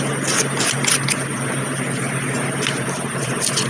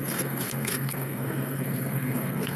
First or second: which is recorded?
first